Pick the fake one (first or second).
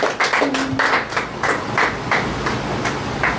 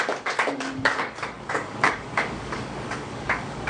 second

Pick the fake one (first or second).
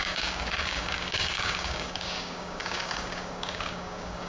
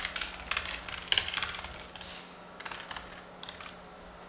first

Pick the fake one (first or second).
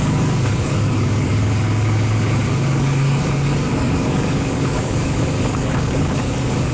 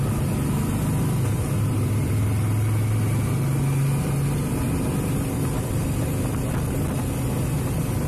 first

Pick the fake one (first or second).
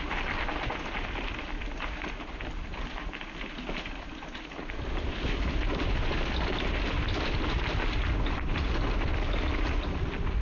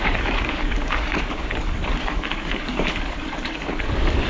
second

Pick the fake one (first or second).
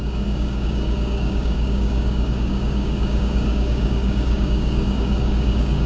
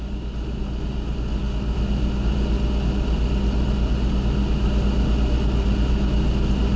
first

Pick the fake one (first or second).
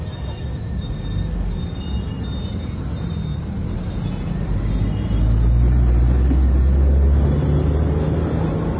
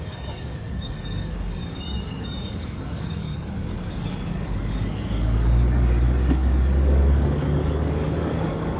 second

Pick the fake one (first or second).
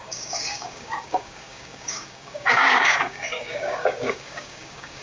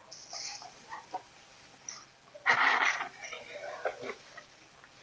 first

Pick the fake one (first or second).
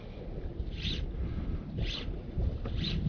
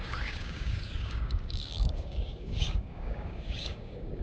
second